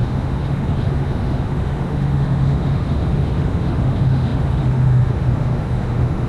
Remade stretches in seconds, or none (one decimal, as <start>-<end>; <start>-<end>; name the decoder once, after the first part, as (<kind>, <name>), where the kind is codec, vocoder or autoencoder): 0.0-6.3 (autoencoder, DAC-VAE)